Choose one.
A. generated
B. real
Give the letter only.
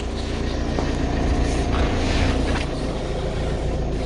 B